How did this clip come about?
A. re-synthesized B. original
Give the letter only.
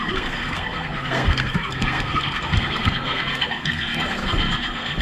A